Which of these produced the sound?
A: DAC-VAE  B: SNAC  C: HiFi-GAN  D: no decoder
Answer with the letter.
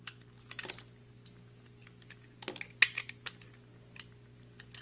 D